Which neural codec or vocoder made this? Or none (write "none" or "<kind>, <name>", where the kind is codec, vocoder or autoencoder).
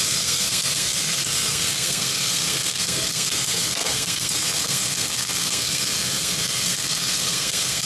codec, SNAC